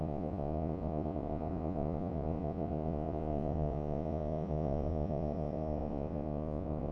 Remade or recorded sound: remade